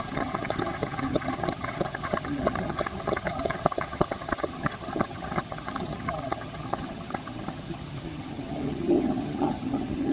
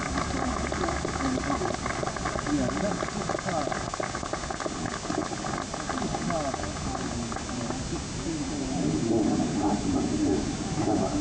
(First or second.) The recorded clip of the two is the second